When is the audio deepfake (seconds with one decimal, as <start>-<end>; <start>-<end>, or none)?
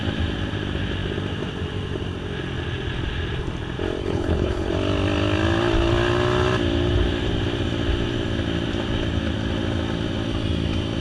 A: 4.0-4.7